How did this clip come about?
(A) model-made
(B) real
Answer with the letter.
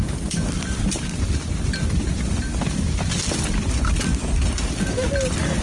B